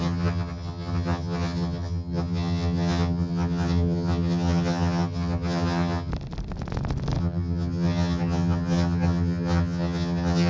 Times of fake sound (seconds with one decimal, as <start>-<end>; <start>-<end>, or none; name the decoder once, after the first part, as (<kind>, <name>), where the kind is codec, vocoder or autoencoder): 0.0-6.1 (vocoder, HiFi-GAN); 7.2-10.5